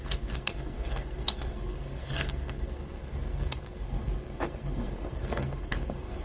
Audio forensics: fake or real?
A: fake